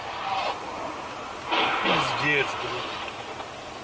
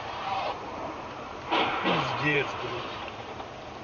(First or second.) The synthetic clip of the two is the second